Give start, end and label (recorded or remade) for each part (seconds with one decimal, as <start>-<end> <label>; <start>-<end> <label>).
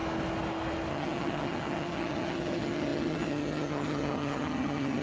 0.0-0.9 recorded; 0.9-5.0 remade